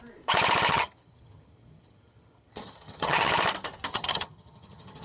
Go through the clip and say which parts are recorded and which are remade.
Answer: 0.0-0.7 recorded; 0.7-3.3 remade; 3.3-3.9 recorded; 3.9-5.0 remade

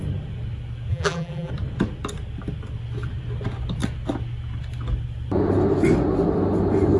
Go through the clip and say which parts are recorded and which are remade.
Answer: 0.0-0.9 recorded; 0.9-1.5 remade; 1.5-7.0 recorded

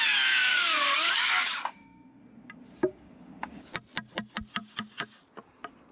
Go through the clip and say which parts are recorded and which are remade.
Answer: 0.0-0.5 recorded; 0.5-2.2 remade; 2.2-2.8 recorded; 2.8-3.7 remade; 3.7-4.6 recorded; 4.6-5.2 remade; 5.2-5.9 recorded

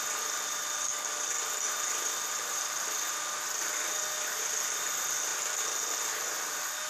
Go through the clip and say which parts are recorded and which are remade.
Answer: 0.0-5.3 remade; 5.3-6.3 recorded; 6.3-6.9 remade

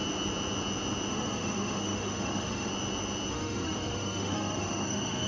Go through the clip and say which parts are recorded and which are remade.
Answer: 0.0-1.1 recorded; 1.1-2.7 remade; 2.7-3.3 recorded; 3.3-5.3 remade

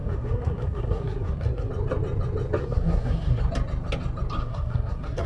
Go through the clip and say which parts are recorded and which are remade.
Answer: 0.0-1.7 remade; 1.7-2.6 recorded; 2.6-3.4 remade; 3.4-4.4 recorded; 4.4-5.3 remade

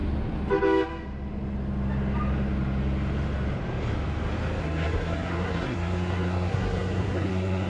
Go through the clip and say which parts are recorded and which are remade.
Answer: 0.0-4.6 recorded; 4.6-7.7 remade

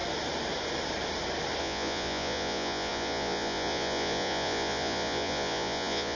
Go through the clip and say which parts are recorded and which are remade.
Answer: 0.0-1.6 recorded; 1.6-6.1 remade